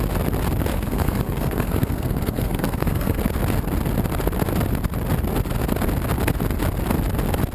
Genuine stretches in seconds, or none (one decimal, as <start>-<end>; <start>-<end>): 0.0-0.7; 3.2-7.5